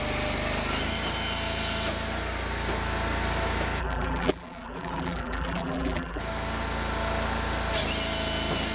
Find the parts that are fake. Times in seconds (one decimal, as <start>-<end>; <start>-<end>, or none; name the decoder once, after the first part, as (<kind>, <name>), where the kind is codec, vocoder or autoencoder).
3.8-6.2 (vocoder, BigVGAN v2)